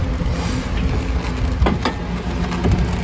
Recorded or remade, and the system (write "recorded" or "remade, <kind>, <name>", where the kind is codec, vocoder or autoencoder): recorded